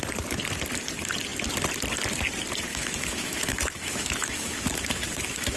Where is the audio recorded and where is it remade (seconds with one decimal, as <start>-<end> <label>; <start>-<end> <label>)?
0.0-2.7 recorded; 2.7-5.6 remade